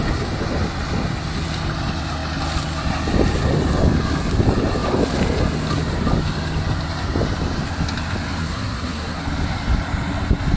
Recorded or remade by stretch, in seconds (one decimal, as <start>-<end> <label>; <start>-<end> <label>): 0.0-8.4 recorded; 8.4-9.2 remade; 9.2-10.6 recorded